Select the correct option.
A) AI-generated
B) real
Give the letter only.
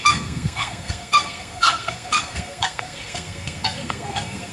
A